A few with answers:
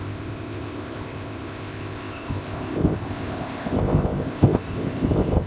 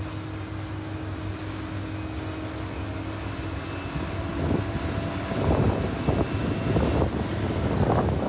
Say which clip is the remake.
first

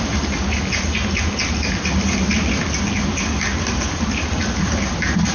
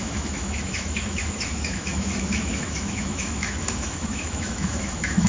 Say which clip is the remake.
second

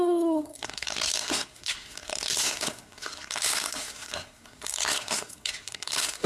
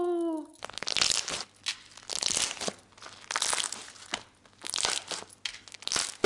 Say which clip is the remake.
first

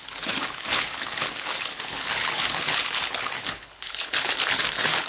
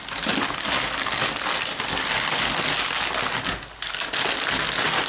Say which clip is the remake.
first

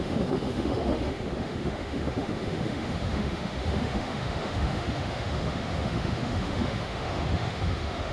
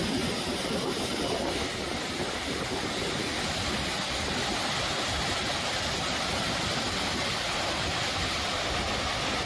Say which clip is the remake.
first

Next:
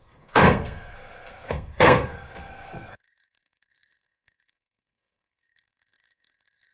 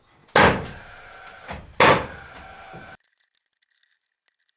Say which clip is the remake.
first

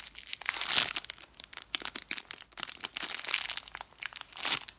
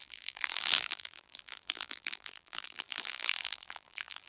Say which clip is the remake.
second